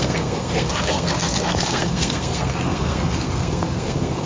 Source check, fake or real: fake